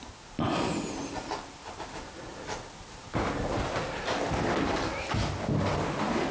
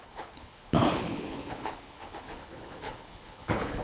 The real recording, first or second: first